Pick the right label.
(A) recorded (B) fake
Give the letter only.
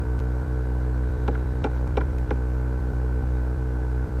B